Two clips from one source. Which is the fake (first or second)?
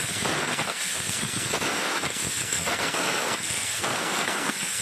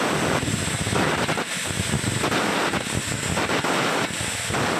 first